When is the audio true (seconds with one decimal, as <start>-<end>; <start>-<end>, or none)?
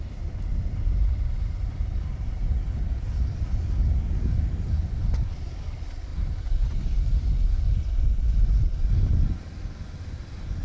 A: 0.0-10.6